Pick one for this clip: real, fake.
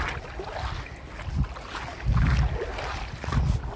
real